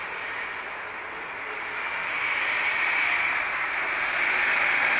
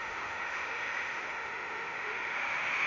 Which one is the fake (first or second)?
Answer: second